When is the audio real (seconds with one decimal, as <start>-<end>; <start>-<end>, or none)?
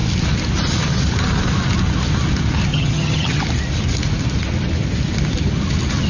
0.0-2.7; 3.4-6.1